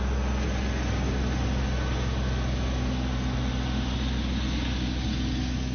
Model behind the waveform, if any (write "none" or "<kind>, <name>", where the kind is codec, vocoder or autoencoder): none